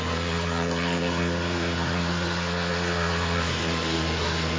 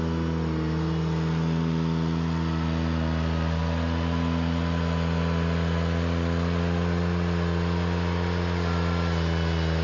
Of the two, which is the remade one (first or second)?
first